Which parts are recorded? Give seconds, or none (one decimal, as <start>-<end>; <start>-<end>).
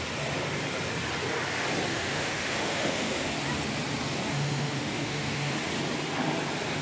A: 0.0-1.9; 3.3-4.3; 5.5-6.8